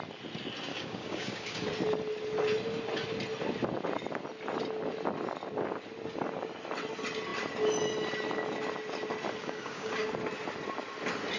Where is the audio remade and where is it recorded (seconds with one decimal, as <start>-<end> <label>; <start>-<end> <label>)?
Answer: 0.0-0.7 recorded; 0.7-1.7 remade; 1.7-9.4 recorded; 9.4-10.1 remade; 10.1-11.4 recorded